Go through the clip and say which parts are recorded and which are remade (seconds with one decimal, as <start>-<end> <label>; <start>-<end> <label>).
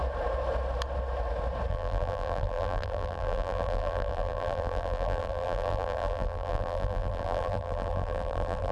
0.0-1.7 recorded; 1.7-8.7 remade